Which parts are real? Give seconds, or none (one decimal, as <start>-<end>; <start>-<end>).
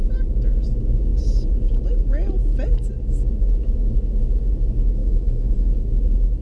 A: 0.0-5.0; 5.7-6.4